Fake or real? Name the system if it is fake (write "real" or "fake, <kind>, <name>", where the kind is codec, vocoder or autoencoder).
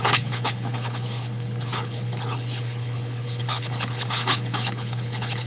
fake, codec, HILCodec